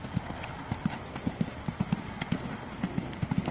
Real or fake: real